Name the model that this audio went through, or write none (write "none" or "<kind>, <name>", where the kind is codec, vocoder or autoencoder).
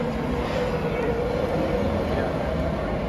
none